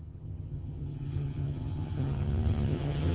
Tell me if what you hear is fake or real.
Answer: fake